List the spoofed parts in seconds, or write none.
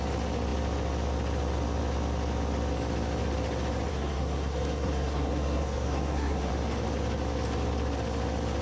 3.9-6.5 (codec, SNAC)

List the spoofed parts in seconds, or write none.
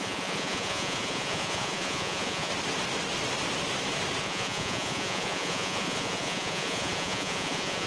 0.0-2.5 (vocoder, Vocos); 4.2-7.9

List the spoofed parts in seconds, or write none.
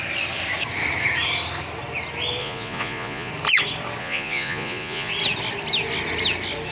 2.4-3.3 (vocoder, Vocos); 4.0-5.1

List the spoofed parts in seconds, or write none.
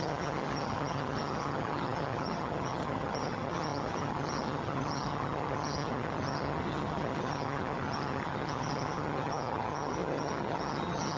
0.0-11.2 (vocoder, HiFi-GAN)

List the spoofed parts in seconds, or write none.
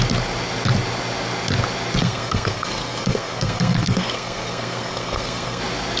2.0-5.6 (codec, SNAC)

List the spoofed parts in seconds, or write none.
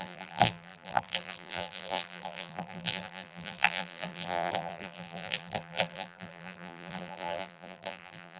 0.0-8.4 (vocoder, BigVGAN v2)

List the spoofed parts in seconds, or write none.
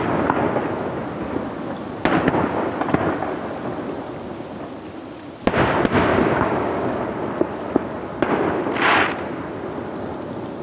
6.1-7.0 (codec, DAC)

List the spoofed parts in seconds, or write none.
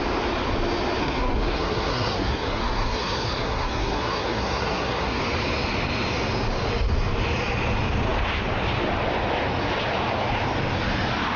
1.0-5.2 (codec, SNAC)